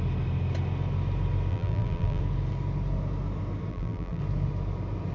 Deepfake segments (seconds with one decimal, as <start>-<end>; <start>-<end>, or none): 1.5-2.2; 3.7-4.2